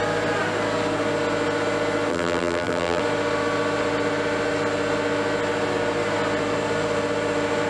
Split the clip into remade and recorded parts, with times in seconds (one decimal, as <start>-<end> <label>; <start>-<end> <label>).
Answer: 0.0-2.1 recorded; 2.1-3.0 remade; 3.0-7.7 recorded